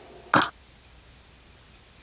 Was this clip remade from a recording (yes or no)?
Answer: no